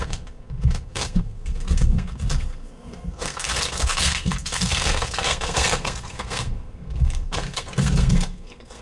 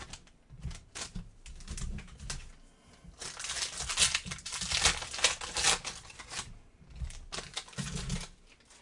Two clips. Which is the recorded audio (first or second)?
second